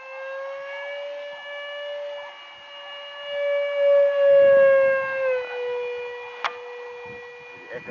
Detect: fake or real real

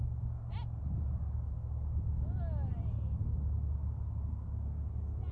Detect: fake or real real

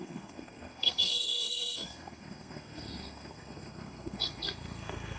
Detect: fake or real fake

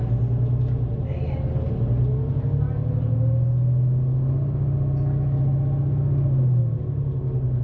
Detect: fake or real real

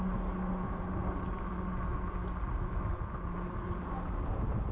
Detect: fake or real real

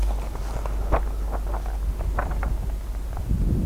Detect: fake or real real